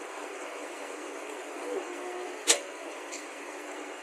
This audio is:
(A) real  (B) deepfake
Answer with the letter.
B